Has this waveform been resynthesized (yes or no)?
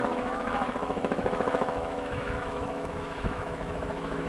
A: yes